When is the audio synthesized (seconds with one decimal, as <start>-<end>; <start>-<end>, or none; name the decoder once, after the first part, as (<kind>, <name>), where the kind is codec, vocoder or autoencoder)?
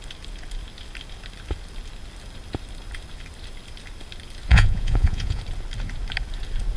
4.5-5.4 (vocoder, Vocos)